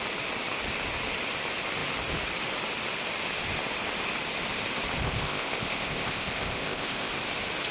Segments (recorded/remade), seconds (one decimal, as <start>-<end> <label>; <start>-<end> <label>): 0.0-5.0 recorded; 5.0-7.1 remade; 7.1-7.7 recorded